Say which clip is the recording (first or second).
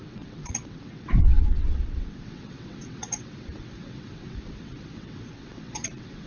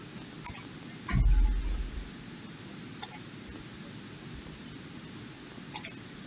second